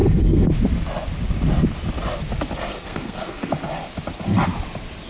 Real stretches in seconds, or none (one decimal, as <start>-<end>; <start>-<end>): 0.5-2.7; 3.5-5.1